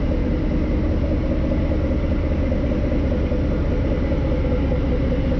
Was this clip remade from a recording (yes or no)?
no